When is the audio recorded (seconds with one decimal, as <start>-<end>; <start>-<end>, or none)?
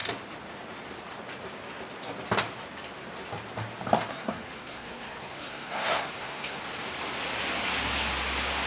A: 0.0-4.1; 6.6-8.7